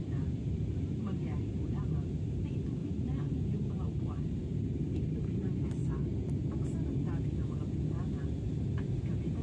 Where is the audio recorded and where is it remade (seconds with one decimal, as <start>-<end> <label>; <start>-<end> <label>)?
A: 0.0-2.8 remade; 2.8-3.3 recorded; 3.3-4.4 remade; 4.4-5.2 recorded; 5.2-5.8 remade; 5.8-8.8 recorded; 8.8-9.4 remade